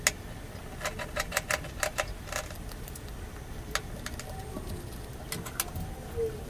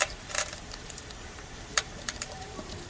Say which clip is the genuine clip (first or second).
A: first